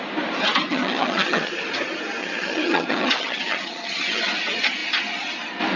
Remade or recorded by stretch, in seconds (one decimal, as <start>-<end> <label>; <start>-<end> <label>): 0.0-0.7 recorded; 0.7-1.5 remade; 1.5-2.2 recorded; 2.2-4.3 remade; 4.3-5.8 recorded